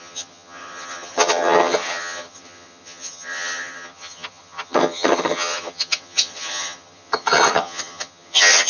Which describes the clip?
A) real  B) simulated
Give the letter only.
B